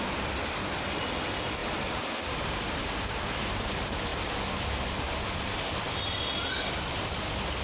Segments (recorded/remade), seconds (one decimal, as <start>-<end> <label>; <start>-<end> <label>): 0.0-7.6 recorded